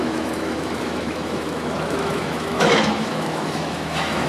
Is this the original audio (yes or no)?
no